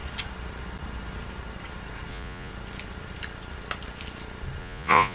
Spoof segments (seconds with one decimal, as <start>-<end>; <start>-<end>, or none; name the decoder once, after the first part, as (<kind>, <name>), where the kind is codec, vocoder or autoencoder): 2.1-2.5 (vocoder, Vocos); 4.6-5.1